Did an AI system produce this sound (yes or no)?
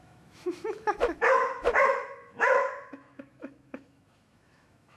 yes